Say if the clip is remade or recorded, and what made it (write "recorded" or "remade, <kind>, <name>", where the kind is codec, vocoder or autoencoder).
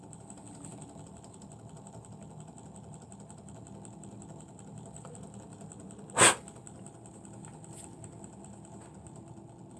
recorded